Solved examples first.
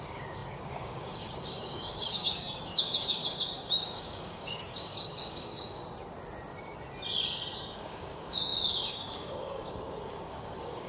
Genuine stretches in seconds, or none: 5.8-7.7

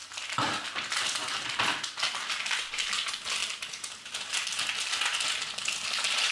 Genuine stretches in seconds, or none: 0.0-6.3

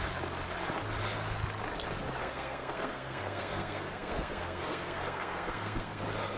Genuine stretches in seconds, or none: 0.0-2.2; 6.0-6.4